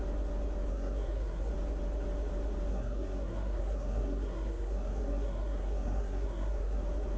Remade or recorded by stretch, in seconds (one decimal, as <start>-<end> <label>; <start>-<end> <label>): 0.0-0.7 recorded; 0.7-1.5 remade; 1.5-2.7 recorded; 2.7-6.8 remade; 6.8-7.2 recorded